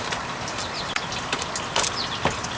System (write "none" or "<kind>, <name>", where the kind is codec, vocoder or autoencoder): none